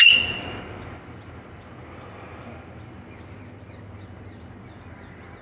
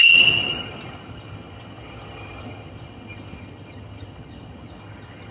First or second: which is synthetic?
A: second